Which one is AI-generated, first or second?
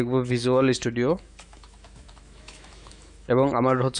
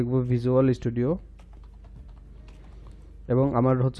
first